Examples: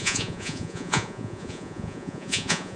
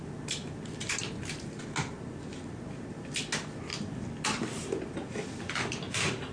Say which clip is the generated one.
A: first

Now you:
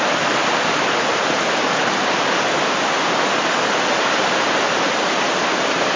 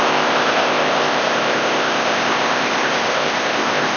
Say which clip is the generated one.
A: second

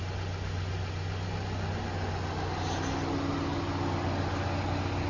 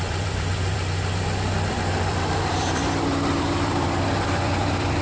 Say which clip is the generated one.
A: second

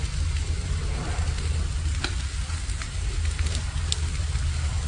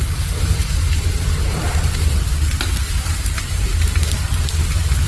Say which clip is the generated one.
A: second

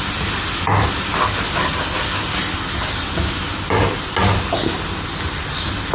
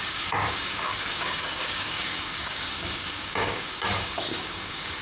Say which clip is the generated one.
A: second